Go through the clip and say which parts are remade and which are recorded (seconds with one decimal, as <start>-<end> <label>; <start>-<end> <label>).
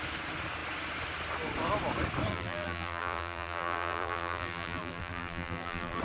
0.0-2.3 recorded; 2.3-6.0 remade